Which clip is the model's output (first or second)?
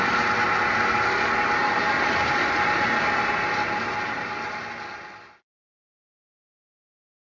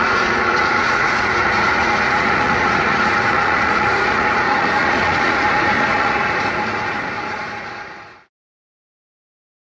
second